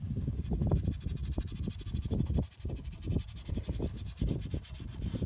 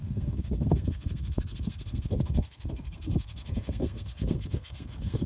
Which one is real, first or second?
first